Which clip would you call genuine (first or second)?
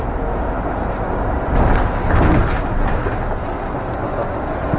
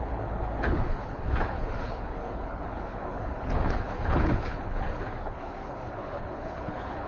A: first